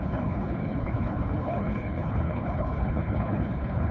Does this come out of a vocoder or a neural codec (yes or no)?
yes